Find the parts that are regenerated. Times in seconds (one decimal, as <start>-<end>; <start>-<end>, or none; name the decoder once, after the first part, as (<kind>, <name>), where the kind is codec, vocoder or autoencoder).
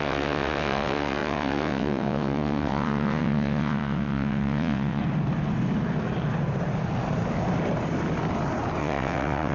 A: 0.0-5.0 (vocoder, WaveNeXt); 8.8-9.5